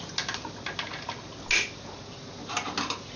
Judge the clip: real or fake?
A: real